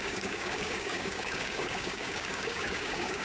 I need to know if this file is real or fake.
fake